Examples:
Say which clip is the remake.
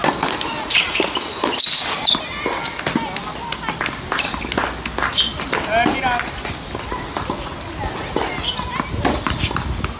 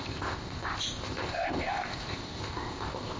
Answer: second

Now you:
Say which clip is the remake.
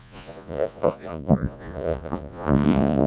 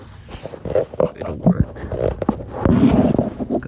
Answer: first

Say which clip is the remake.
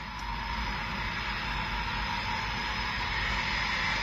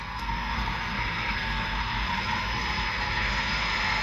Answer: second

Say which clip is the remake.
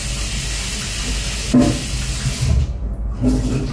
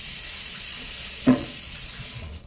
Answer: second